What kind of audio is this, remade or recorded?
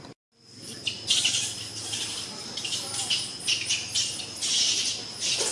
recorded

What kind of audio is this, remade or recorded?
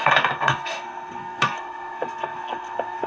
remade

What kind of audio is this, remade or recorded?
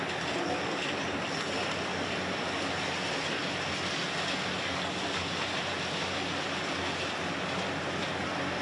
recorded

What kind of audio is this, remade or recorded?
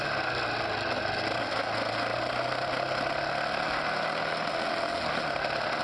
recorded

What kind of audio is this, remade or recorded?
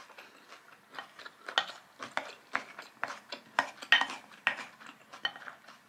recorded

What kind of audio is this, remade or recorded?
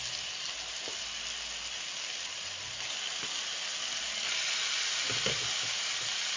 recorded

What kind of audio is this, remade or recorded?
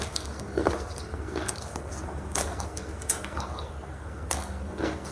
remade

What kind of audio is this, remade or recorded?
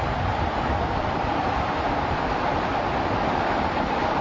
remade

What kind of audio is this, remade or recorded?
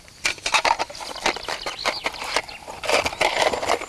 recorded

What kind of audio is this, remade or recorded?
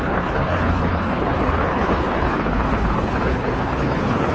remade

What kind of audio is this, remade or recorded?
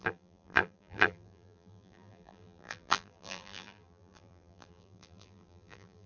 remade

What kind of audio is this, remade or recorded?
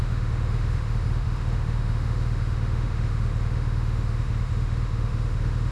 remade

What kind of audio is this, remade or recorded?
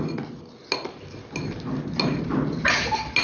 recorded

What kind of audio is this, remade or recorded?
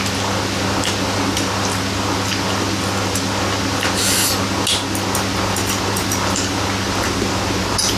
recorded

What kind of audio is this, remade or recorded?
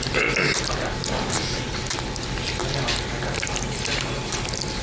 recorded